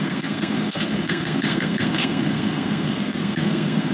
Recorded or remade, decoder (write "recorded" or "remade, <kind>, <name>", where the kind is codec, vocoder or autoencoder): remade, codec, SNAC